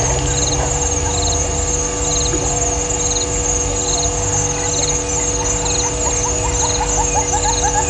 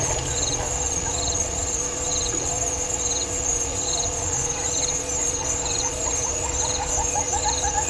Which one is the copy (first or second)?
second